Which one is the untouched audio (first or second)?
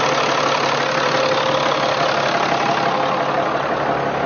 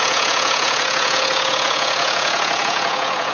first